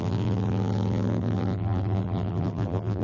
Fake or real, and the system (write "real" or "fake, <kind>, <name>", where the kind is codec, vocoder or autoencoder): fake, vocoder, BigVGAN v2